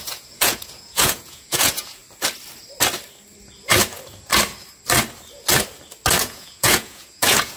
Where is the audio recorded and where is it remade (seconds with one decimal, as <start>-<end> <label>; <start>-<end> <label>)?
0.0-2.0 remade; 2.0-6.2 recorded; 6.2-7.6 remade